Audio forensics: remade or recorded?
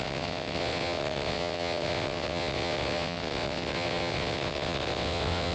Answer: remade